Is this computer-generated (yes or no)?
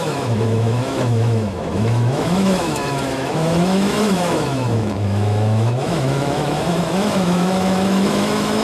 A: yes